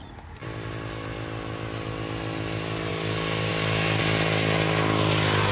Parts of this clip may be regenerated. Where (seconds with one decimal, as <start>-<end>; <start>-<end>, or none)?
none